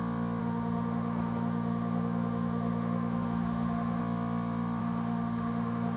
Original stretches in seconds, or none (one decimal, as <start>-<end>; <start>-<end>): 0.0-0.4; 4.0-4.8